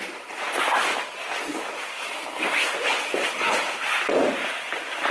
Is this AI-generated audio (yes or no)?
no